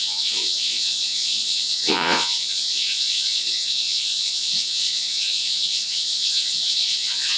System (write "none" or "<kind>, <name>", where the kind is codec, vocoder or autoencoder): vocoder, Vocos